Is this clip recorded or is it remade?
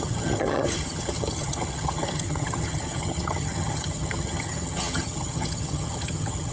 remade